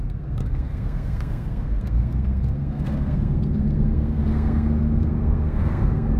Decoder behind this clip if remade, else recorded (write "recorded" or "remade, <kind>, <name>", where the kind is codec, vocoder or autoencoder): remade, codec, SNAC